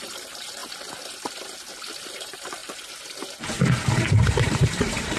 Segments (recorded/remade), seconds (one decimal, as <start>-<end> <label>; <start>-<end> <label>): 0.0-0.6 remade; 0.6-2.1 recorded; 2.1-2.6 remade; 2.6-3.9 recorded; 3.9-5.2 remade